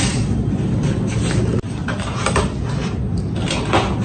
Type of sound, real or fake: real